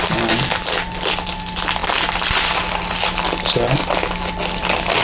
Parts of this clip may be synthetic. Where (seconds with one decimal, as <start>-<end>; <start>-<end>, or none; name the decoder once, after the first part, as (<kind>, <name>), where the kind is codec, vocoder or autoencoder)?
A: none